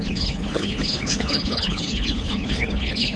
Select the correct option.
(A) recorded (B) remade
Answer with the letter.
B